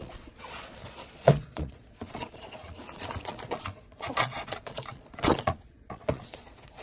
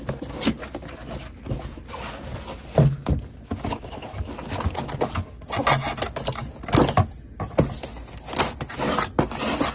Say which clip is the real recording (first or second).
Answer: second